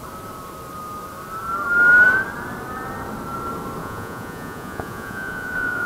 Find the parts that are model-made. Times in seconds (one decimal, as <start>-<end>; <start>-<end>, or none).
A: 3.8-5.9